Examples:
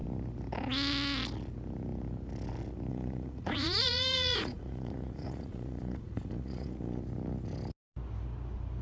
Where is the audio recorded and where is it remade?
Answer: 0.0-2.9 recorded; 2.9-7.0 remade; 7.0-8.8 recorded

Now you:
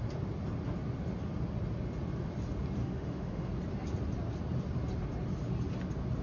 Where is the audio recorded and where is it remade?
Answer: 0.0-2.8 recorded; 2.8-3.5 remade; 3.5-6.2 recorded

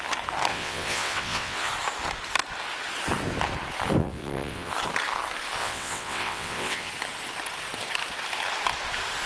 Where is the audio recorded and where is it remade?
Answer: 0.0-0.5 recorded; 0.5-1.7 remade; 1.7-4.0 recorded; 4.0-4.7 remade; 4.7-5.6 recorded; 5.6-6.9 remade; 6.9-9.3 recorded

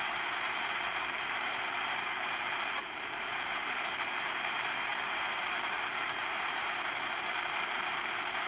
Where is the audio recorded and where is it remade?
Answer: 0.0-8.5 remade

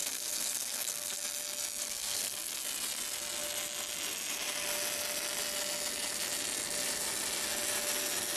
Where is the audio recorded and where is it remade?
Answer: 0.0-1.2 remade; 1.2-1.8 recorded; 1.8-2.3 remade; 2.3-8.4 recorded

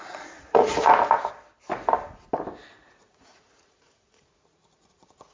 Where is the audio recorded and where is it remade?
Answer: 0.0-0.9 remade; 0.9-2.7 recorded; 2.7-5.3 remade